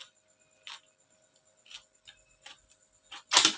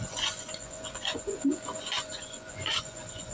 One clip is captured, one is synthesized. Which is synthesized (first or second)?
second